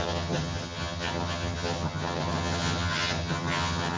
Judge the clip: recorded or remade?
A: remade